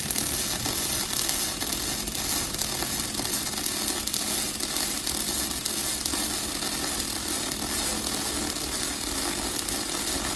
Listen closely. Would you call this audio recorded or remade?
recorded